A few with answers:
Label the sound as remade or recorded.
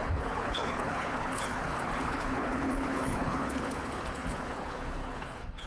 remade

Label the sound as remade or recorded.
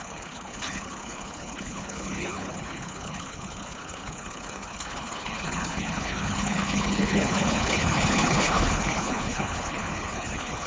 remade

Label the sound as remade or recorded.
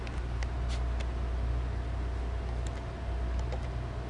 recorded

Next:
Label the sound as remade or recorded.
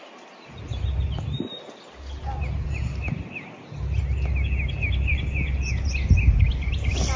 recorded